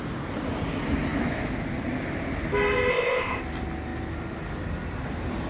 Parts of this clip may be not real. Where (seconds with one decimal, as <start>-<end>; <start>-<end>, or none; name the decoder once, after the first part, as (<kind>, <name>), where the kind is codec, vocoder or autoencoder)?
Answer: 2.9-3.4 (codec, ZipCodec)